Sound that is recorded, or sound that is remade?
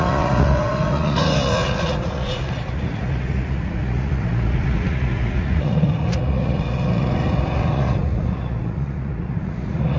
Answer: remade